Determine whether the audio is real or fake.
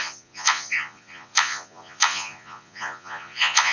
fake